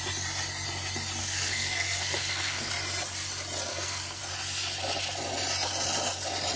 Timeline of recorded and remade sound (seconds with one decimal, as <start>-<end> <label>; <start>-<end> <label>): 0.0-1.2 recorded; 1.2-2.7 remade; 2.7-3.7 recorded; 3.7-4.2 remade; 4.2-6.6 recorded